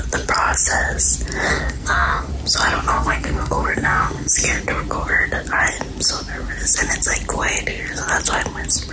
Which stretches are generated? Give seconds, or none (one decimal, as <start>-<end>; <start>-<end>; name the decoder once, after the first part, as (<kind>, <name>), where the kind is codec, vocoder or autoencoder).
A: 1.5-2.3 (codec, SNAC); 2.9-4.3